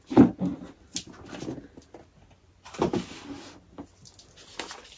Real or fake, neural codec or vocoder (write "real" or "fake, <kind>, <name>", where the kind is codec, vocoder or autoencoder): real